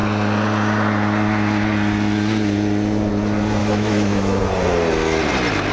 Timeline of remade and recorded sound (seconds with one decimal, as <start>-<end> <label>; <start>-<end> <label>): 0.0-3.6 recorded; 3.6-4.4 remade; 4.4-5.7 recorded